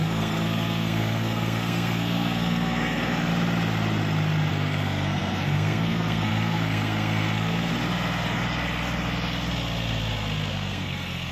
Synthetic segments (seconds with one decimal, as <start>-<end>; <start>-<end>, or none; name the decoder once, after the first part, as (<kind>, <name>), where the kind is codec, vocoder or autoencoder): 0.0-3.3 (codec, SNAC); 4.5-7.7; 10.5-11.3